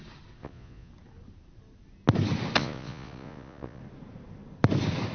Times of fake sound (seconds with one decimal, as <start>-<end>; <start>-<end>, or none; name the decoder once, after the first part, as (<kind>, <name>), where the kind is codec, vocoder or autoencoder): 0.4-0.9 (vocoder, Vocos); 2.6-3.8